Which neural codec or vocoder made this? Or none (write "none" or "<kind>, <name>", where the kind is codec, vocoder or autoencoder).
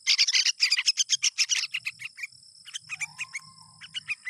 none